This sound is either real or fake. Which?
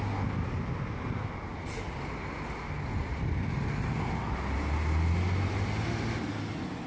real